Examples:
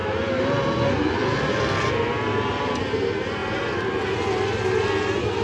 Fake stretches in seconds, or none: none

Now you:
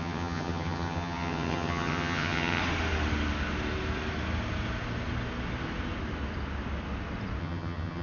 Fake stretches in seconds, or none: 0.0-2.6; 7.4-8.0